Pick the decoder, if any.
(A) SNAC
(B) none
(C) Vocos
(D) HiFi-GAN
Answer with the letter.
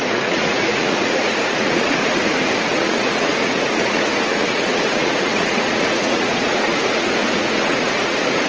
C